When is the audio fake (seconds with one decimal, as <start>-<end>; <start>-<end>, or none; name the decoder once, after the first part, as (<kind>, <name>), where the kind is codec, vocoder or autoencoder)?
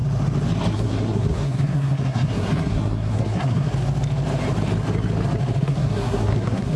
0.7-3.7 (codec, SNAC); 5.6-6.8